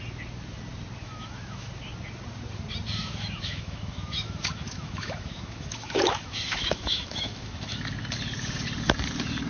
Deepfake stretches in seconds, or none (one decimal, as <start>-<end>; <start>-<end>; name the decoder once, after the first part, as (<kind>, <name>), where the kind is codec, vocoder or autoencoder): 1.0-1.7 (autoencoder, DAC-VAE); 3.0-7.8